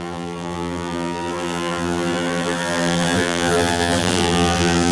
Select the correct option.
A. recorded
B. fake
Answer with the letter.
B